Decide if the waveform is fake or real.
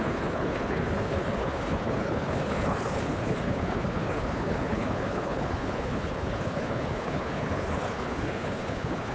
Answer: fake